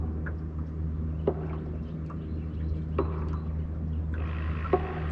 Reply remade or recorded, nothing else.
recorded